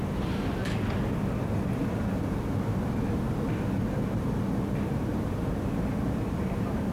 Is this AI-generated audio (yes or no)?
no